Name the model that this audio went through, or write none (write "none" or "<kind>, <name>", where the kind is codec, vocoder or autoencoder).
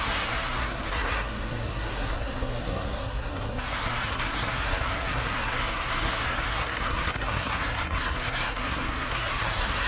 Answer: codec, SNAC